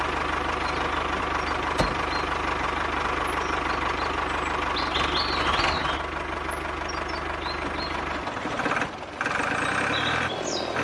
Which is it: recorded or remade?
recorded